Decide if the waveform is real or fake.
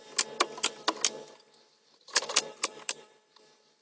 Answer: real